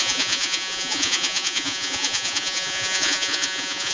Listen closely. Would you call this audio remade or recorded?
remade